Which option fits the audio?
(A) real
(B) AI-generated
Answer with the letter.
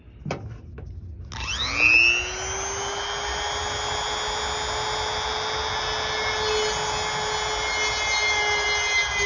A